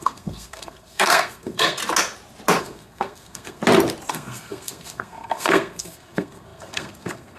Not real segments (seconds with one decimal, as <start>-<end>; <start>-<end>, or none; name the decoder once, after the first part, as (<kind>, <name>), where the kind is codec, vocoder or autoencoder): 0.0-1.8 (codec, SNAC); 2.6-3.6; 4.1-7.4

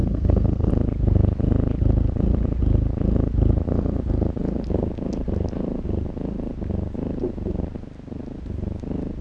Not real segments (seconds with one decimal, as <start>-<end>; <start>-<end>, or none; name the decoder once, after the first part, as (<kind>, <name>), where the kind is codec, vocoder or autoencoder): 0.0-0.7 (codec, SNAC)

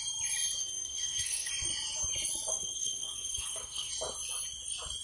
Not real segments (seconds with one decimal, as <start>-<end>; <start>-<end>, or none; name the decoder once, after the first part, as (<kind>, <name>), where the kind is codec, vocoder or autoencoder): 0.6-1.5 (codec, SNAC); 2.5-3.9

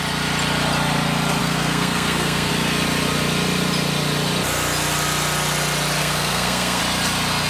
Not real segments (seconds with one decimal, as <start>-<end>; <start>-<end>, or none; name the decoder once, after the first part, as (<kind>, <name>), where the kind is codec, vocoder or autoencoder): 1.4-2.5 (codec, SNAC); 6.0-6.8

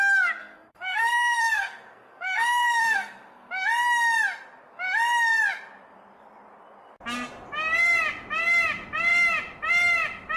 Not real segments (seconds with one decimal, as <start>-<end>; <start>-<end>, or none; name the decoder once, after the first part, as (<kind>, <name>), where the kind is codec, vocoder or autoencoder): 0.4-3.5 (codec, SNAC)

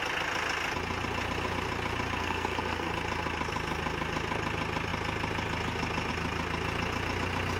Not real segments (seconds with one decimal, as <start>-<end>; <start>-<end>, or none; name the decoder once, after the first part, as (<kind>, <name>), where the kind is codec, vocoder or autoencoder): 2.2-2.9 (codec, SNAC)

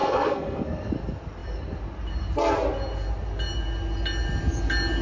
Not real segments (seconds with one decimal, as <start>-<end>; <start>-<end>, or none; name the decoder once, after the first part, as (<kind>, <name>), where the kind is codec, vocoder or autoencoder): 0.0-0.9 (codec, SNAC)